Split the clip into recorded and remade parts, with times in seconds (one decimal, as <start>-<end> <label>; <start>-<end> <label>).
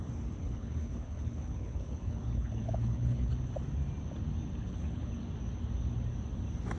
0.0-0.4 recorded; 0.4-3.3 remade; 3.3-4.6 recorded; 4.6-5.2 remade; 5.2-6.8 recorded